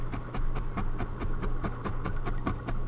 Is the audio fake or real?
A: real